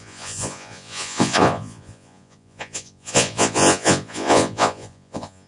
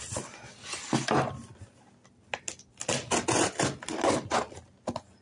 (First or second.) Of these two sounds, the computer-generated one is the first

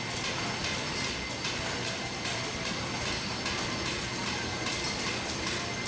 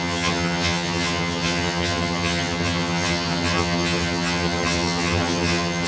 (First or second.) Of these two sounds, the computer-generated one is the second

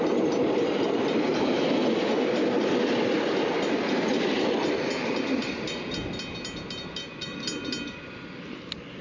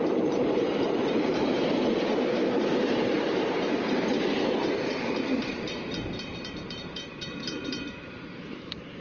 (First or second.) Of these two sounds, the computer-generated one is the second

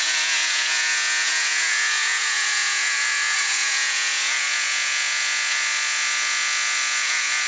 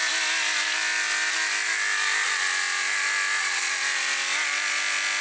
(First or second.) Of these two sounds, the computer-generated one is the first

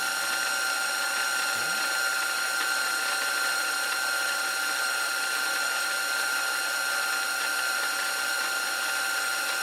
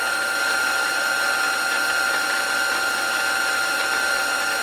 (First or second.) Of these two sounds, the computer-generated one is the first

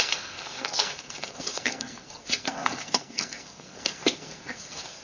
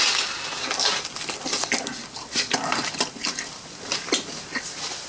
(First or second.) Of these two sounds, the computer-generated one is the first